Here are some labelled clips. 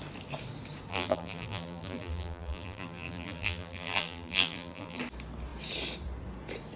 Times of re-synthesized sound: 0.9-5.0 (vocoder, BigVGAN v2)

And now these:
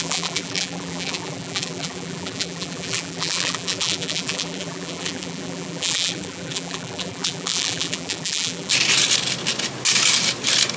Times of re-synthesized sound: 0.0-8.7 (vocoder, BigVGAN v2)

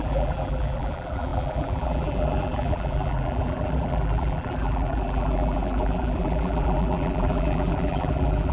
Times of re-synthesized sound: 0.0-8.5 (vocoder, BigVGAN v2)

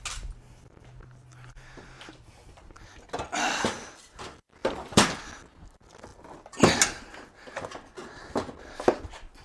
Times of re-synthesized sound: 4.6-5.2 (vocoder, BigVGAN v2)

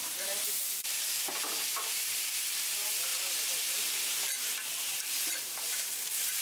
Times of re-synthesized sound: 0.0-3.1 (vocoder, BigVGAN v2); 3.6-4.1; 5.3-6.4

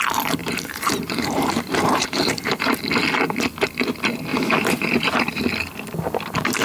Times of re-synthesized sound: 0.4-2.8 (vocoder, BigVGAN v2); 4.3-5.4

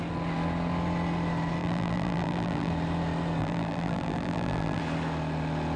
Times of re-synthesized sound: 1.6-2.7 (vocoder, BigVGAN v2); 3.4-4.8

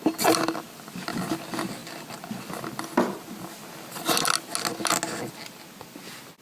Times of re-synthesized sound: none